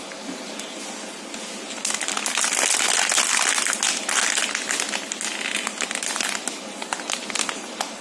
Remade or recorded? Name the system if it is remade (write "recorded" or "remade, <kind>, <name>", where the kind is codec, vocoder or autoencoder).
recorded